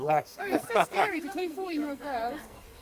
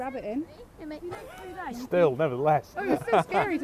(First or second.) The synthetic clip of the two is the first